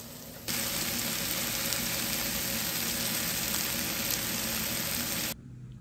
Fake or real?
real